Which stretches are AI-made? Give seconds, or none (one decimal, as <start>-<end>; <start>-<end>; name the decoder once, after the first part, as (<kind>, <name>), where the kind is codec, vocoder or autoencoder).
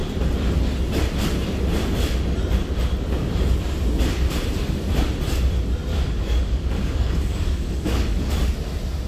5.9-8.3 (codec, DAC)